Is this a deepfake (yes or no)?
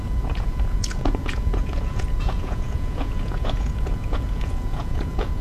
yes